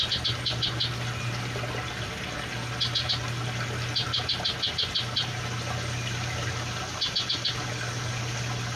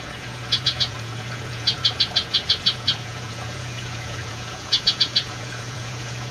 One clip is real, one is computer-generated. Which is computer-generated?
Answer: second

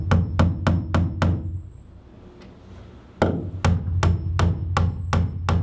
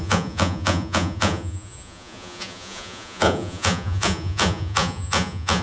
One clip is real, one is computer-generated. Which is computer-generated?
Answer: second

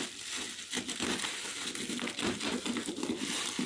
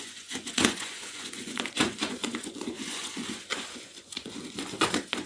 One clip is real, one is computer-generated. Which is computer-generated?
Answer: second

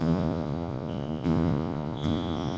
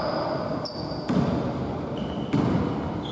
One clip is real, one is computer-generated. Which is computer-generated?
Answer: first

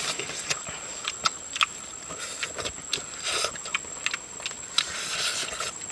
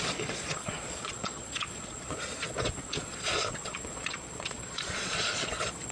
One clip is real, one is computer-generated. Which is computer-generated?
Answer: second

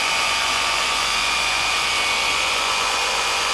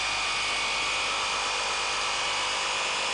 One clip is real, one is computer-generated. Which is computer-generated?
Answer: first